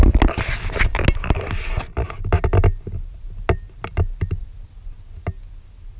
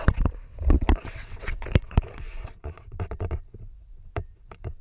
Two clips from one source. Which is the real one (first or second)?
first